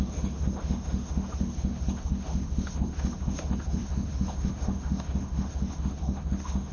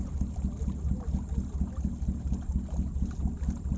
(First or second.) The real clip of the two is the second